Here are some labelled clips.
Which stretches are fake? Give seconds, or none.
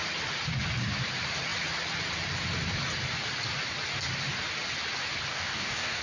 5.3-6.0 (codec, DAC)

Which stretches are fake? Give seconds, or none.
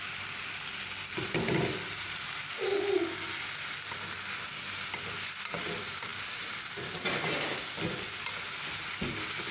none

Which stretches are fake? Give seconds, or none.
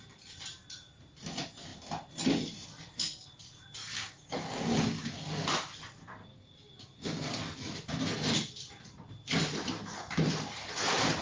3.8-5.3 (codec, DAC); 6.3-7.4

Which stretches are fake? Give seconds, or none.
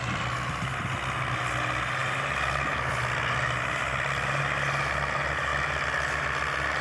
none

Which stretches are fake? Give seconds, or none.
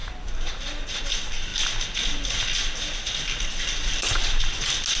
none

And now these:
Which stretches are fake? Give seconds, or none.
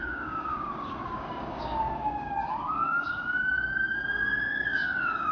0.0-5.3 (codec, DAC)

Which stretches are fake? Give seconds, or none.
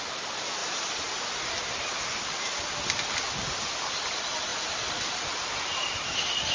none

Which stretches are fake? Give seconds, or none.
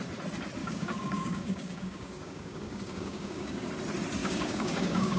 0.6-3.7 (codec, DAC); 4.2-5.2